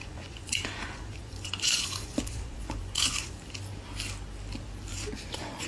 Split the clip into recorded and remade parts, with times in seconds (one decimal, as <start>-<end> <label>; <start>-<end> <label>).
0.0-3.4 remade; 3.4-4.9 recorded; 4.9-5.7 remade